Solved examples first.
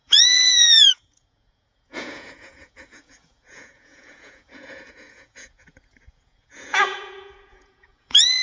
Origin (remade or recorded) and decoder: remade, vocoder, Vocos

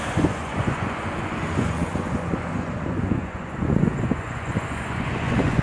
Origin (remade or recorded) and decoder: remade, vocoder, Vocos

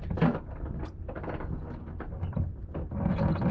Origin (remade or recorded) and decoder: recorded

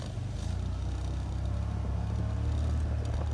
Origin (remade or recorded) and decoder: recorded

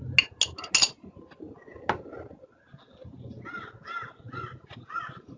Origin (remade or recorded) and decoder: recorded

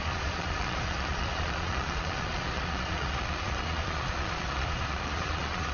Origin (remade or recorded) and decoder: remade, vocoder, Vocos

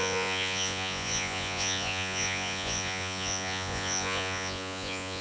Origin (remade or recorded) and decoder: remade, vocoder, Vocos